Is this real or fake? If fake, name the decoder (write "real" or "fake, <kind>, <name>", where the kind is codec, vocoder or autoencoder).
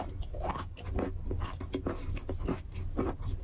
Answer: real